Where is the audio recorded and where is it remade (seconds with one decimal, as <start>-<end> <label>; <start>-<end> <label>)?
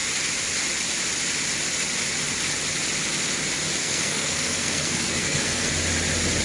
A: 0.0-3.8 recorded; 3.8-5.7 remade; 5.7-6.4 recorded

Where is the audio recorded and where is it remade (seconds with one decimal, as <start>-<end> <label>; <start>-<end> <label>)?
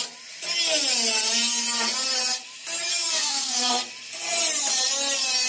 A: 0.0-2.9 recorded; 2.9-3.7 remade; 3.7-5.5 recorded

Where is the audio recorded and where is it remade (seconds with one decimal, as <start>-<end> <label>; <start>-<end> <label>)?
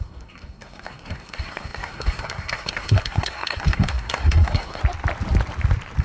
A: 0.0-4.8 remade; 4.8-6.0 recorded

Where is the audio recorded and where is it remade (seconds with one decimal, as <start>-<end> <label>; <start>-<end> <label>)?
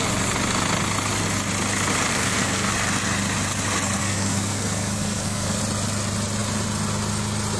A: 0.0-2.1 recorded; 2.1-2.7 remade; 2.7-4.0 recorded; 4.0-5.6 remade; 5.6-7.6 recorded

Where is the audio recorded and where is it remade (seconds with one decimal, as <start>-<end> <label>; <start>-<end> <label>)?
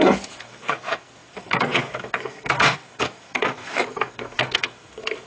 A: 0.0-5.3 remade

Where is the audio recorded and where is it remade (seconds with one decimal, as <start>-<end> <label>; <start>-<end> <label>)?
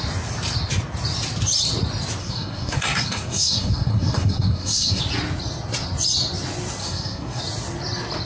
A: 0.0-2.2 recorded; 2.2-5.0 remade; 5.0-6.8 recorded; 6.8-7.4 remade; 7.4-8.3 recorded